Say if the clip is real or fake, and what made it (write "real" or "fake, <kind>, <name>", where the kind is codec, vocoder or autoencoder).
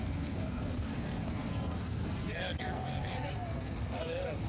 fake, codec, SNAC